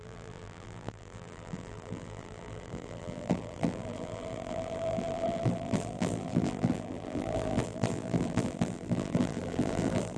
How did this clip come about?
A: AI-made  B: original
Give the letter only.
A